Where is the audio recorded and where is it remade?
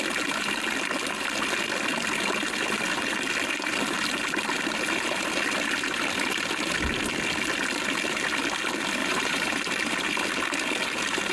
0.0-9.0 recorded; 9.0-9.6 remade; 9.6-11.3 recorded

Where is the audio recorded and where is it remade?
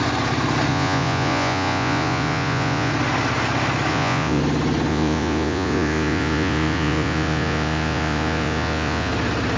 0.0-0.7 recorded; 0.7-2.9 remade; 2.9-3.9 recorded; 3.9-4.4 remade; 4.4-4.9 recorded; 4.9-9.1 remade; 9.1-9.6 recorded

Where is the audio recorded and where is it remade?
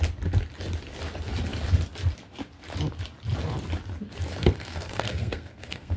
0.0-4.4 recorded; 4.4-6.0 remade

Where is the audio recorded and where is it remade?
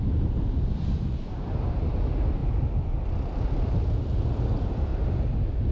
0.0-2.4 remade; 2.4-4.3 recorded; 4.3-4.9 remade; 4.9-5.7 recorded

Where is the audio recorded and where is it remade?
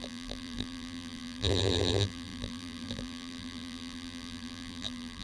0.0-5.2 remade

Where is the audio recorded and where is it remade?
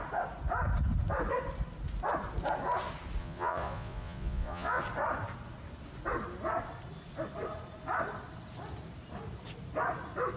0.0-3.2 recorded; 3.2-4.8 remade; 4.8-10.4 recorded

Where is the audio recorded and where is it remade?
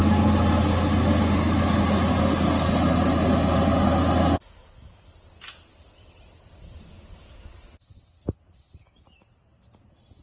0.0-10.2 recorded